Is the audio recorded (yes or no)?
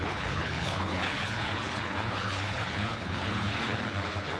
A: no